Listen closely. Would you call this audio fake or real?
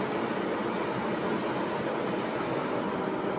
real